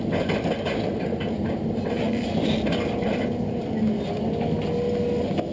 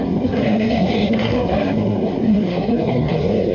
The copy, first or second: second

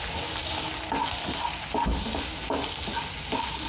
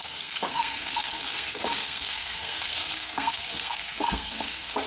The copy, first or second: second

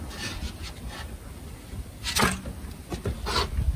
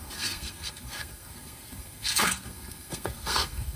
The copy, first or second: second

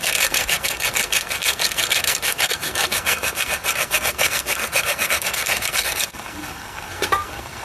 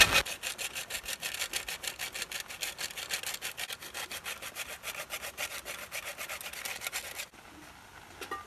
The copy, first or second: first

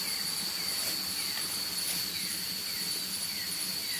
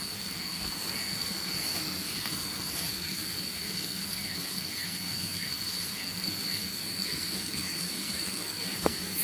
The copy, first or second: second